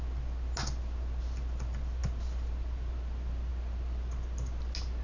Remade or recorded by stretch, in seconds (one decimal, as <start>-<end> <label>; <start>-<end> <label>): 0.0-5.0 recorded